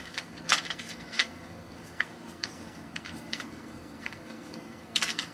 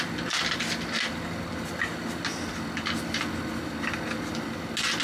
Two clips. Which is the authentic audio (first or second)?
second